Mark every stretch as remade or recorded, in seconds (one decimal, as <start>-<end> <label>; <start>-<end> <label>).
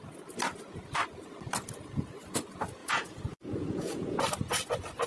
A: 0.0-2.8 recorded; 2.8-4.2 remade; 4.2-5.1 recorded